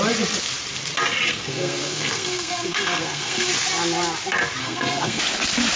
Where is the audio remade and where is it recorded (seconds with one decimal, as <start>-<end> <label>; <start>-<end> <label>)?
0.0-1.3 recorded; 1.3-3.5 remade; 3.5-4.6 recorded; 4.6-5.2 remade; 5.2-5.8 recorded